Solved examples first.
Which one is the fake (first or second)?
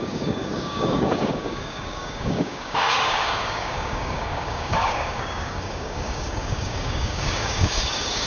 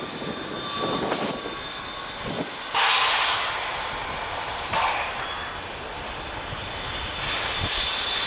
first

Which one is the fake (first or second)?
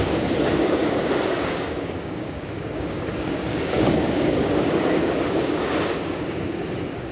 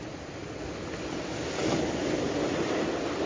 first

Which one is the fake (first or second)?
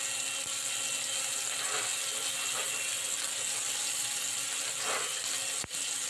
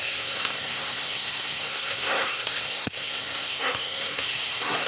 second